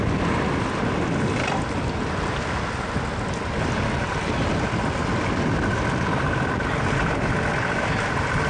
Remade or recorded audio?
recorded